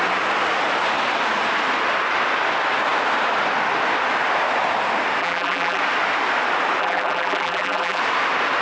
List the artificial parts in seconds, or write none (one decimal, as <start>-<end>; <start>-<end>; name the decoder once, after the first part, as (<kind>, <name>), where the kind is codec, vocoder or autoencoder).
5.2-5.8 (vocoder, BigVGAN v2); 6.8-8.0